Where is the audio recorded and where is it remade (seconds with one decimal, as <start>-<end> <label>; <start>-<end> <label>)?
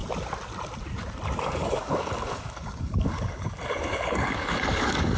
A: 0.0-1.4 recorded; 1.4-5.2 remade